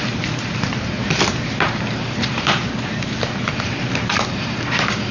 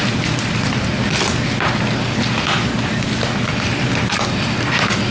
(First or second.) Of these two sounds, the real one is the second